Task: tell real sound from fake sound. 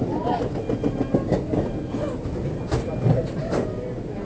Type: real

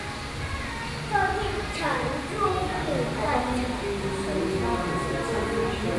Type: real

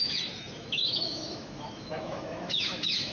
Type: fake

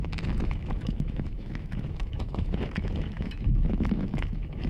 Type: fake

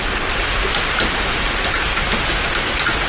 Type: real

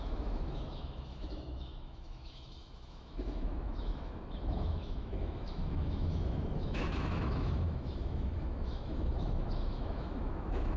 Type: fake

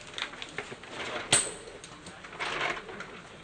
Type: real